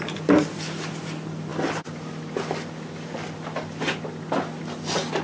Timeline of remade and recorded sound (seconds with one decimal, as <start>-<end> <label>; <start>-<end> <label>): 0.0-5.2 recorded